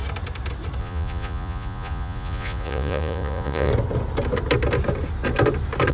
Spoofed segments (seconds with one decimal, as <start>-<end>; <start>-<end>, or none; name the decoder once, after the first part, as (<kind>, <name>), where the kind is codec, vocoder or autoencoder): 0.8-3.7 (vocoder, Vocos)